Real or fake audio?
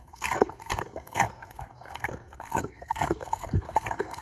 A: fake